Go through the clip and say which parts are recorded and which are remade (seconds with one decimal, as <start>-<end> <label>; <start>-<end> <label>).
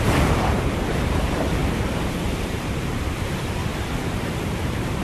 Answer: 0.0-1.6 remade; 1.6-2.3 recorded; 2.3-5.0 remade